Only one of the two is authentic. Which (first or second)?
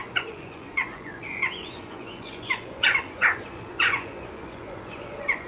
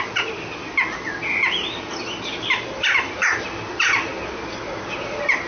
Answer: second